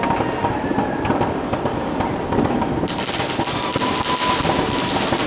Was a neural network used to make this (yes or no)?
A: no